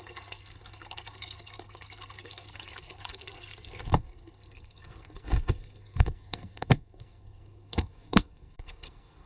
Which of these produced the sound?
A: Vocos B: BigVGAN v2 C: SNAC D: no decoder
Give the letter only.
C